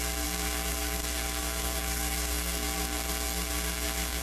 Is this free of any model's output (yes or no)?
no